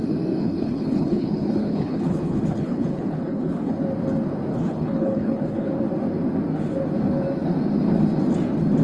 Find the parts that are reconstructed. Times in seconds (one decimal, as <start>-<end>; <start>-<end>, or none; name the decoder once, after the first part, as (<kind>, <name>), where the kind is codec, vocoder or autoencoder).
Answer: 0.4-3.7 (codec, HILCodec); 4.5-5.7